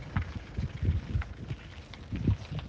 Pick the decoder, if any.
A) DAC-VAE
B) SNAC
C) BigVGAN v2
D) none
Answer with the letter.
D